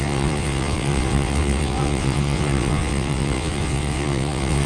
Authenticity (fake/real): fake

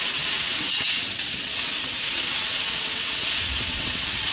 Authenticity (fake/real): fake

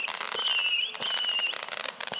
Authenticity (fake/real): real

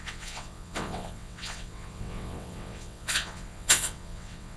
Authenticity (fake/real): fake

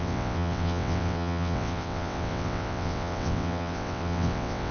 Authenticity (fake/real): fake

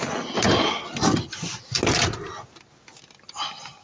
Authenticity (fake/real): real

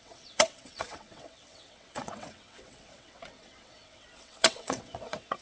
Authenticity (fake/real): fake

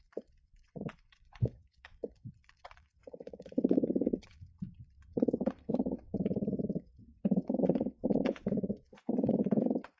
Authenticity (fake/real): fake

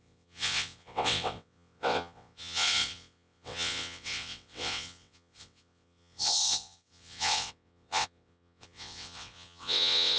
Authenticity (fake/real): fake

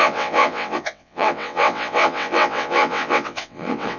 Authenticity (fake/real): fake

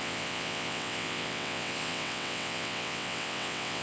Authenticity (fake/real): fake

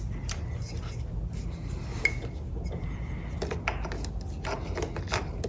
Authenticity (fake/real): real